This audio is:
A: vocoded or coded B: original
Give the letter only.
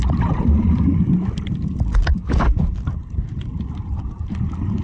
B